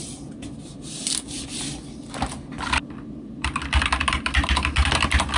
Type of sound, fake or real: real